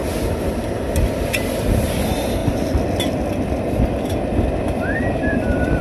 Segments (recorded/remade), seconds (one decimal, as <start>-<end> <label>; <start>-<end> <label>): 0.0-1.2 recorded; 1.2-2.4 remade; 2.4-4.2 recorded; 4.2-5.8 remade